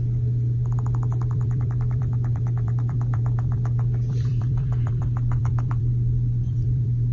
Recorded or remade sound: remade